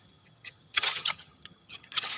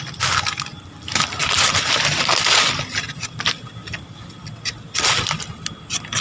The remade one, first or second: first